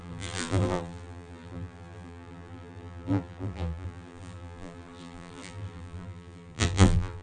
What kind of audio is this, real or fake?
fake